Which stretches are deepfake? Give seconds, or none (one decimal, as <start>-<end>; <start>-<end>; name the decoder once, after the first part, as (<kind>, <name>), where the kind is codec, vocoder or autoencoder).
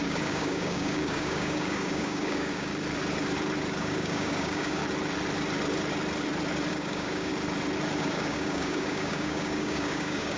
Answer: 0.0-2.7 (codec, DAC); 3.8-4.8; 6.7-7.3; 8.0-10.4